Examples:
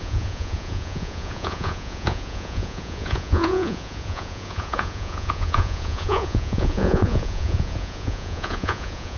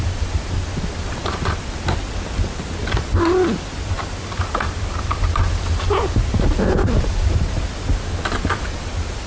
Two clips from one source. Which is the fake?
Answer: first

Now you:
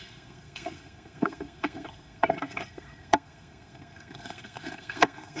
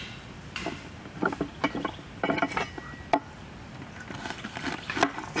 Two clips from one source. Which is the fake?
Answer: first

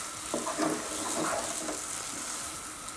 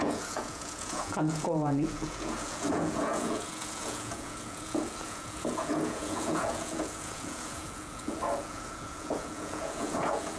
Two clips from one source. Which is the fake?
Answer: second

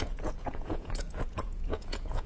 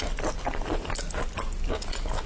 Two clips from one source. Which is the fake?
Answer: first